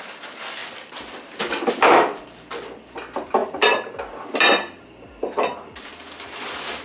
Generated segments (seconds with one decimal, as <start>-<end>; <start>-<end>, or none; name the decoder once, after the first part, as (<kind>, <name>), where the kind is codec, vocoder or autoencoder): 0.6-1.7 (vocoder, BigVGAN v2); 3.4-5.9